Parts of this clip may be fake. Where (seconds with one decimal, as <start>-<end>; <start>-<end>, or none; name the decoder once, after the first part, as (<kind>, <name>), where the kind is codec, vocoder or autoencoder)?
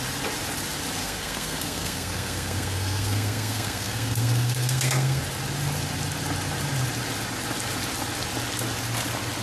1.0-5.2 (codec, SNAC)